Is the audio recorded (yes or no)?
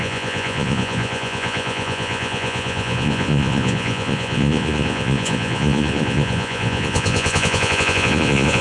no